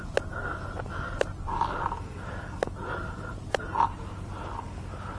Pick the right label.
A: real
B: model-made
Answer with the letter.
A